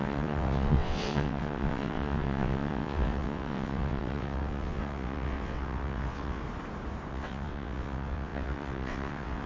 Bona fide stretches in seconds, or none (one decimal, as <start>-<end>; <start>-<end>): 6.4-7.1